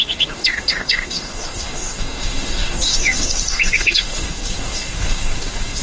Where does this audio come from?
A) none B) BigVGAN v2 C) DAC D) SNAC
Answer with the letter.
C